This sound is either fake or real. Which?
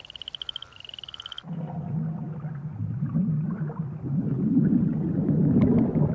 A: real